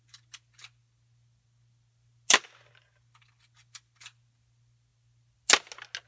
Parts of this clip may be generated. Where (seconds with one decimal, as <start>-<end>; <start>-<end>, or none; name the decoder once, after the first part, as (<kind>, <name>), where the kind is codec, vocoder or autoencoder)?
none